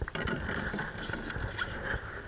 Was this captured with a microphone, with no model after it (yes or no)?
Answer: yes